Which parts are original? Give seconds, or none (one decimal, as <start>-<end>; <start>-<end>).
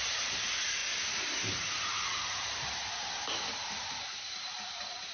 0.0-5.1